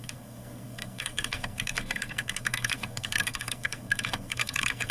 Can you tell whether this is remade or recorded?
remade